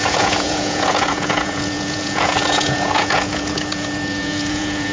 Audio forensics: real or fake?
fake